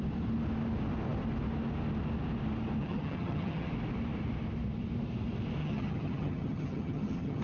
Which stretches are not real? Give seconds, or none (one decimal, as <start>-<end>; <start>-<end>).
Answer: 2.8-3.7; 5.6-7.4